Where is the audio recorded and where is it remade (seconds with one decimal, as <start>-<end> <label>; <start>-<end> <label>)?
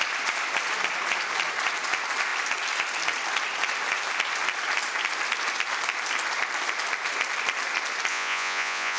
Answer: 0.0-8.1 recorded; 8.1-9.0 remade